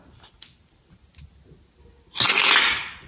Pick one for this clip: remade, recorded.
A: recorded